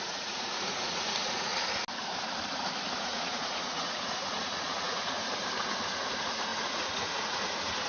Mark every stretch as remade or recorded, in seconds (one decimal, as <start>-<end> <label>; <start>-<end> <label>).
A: 0.0-1.5 remade; 1.5-3.0 recorded; 3.0-5.2 remade; 5.2-5.9 recorded; 5.9-7.9 remade